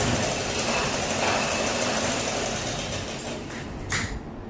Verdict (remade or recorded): recorded